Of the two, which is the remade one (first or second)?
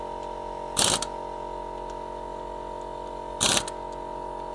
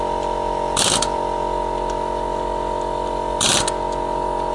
second